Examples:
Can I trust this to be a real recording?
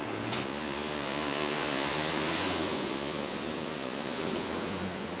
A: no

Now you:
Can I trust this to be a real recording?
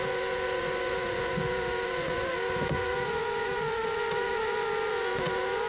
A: no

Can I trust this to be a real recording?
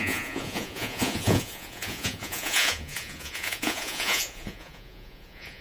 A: no